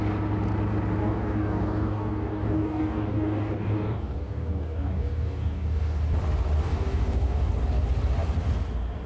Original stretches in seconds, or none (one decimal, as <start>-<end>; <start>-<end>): 0.0-1.0; 6.0-6.6; 7.5-9.1